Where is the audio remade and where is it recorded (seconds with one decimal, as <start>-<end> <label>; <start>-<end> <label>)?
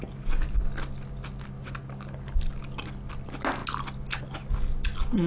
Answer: 0.0-5.3 recorded